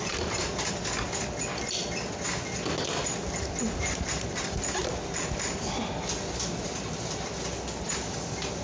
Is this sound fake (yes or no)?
no